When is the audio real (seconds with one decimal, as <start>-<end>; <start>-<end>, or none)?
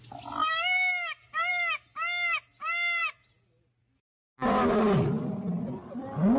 0.0-6.4